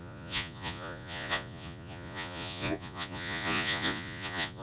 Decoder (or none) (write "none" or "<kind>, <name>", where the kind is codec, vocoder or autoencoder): vocoder, Vocos